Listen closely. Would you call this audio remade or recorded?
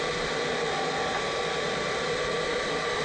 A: recorded